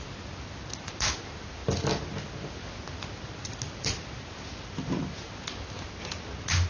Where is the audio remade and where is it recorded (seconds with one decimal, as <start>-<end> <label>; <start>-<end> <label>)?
0.0-6.7 recorded